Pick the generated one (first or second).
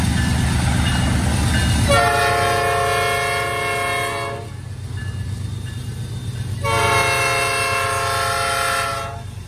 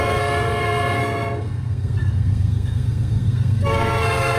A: second